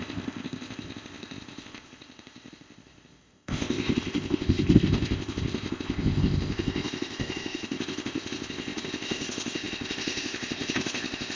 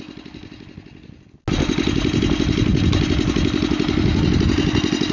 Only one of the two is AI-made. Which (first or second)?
first